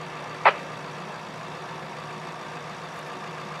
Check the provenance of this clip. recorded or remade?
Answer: remade